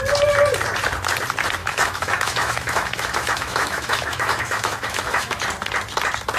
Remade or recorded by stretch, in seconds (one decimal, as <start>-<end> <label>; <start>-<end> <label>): 0.0-1.6 recorded; 1.6-5.4 remade; 5.4-6.4 recorded